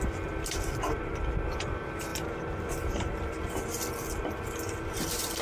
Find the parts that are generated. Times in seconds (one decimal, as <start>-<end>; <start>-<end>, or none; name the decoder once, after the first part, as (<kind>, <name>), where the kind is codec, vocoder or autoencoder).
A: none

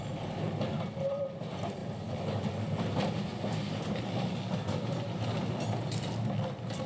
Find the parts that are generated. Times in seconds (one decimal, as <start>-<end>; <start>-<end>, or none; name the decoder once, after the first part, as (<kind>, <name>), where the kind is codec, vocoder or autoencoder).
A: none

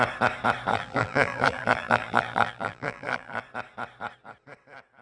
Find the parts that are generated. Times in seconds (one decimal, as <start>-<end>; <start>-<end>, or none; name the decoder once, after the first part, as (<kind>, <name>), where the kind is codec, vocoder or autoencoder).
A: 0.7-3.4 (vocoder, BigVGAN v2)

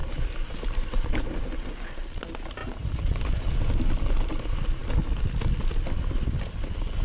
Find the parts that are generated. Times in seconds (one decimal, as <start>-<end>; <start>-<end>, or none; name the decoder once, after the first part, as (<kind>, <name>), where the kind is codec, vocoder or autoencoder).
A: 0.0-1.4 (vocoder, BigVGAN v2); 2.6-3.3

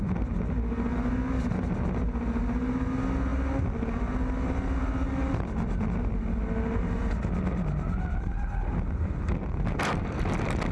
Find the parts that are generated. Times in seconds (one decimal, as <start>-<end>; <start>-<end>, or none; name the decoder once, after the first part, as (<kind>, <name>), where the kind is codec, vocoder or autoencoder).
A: none